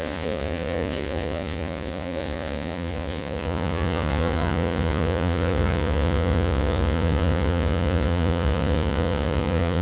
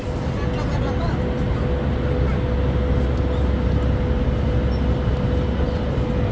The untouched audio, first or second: second